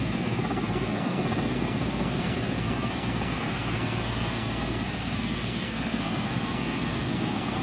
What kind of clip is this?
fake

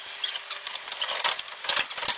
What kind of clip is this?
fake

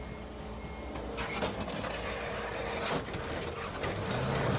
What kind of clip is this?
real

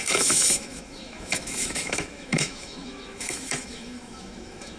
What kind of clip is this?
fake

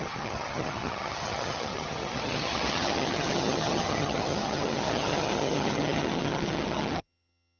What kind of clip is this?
fake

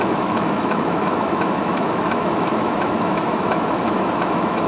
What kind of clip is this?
fake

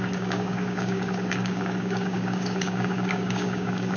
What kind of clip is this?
fake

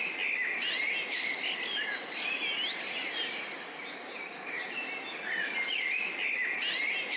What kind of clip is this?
real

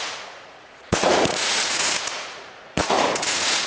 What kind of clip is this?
fake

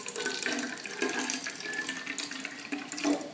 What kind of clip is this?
real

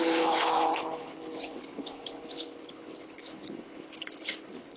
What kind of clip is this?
fake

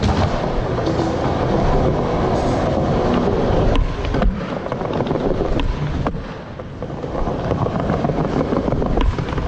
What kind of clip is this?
real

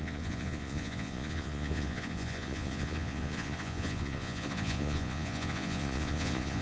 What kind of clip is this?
fake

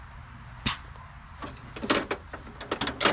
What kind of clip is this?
real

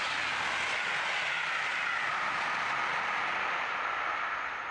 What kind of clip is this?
real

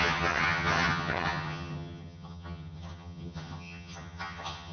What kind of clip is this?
fake